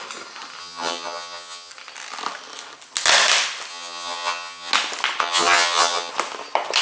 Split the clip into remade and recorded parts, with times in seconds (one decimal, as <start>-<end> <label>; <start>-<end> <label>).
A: 0.0-0.6 recorded; 0.6-1.7 remade; 1.7-3.7 recorded; 3.7-4.7 remade; 4.7-5.2 recorded; 5.2-6.1 remade; 6.1-6.8 recorded